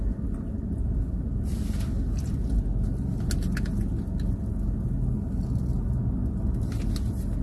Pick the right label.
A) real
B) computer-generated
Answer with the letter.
A